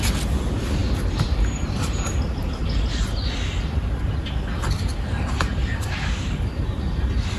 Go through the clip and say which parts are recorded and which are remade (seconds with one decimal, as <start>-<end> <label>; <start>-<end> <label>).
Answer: 0.0-0.8 recorded; 0.8-2.4 remade; 2.4-7.4 recorded